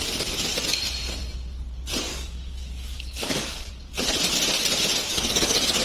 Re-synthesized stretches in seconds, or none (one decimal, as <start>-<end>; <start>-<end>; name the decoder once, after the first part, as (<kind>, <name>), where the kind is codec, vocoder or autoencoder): 2.1-3.7 (codec, DAC); 5.1-5.8

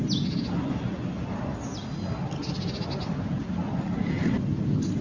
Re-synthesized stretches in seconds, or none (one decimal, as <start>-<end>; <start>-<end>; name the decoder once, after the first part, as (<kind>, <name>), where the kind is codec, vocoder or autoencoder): none